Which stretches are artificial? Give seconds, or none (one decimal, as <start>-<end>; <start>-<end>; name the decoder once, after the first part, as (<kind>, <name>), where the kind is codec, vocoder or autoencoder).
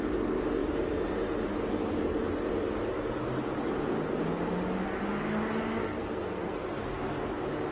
5.8-7.1 (codec, SNAC)